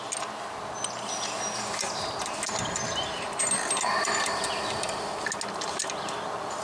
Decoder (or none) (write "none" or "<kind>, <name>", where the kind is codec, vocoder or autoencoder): none